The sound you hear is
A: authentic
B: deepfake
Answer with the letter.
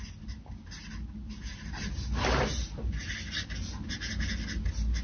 A